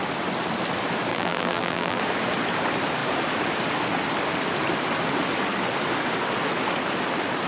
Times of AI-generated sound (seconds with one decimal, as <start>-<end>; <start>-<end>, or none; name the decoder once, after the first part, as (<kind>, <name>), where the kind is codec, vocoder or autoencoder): 1.1-2.0 (vocoder, BigVGAN v2)